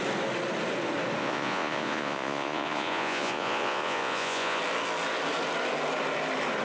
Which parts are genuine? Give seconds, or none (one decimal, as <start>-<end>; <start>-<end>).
0.0-1.2; 4.6-6.6